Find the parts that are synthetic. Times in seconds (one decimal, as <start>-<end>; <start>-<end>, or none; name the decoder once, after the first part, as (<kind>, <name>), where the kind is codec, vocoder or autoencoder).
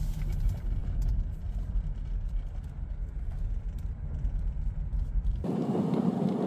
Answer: none